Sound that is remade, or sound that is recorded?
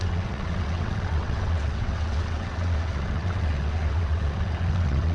remade